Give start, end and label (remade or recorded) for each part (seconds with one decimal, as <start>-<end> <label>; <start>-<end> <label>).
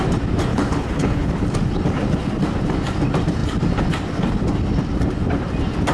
0.0-0.5 recorded; 0.5-1.3 remade; 1.3-5.9 recorded